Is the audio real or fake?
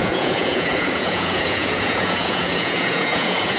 fake